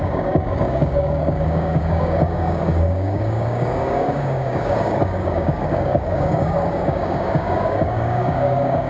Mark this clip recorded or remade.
remade